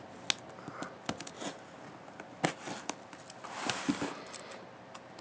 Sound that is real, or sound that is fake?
real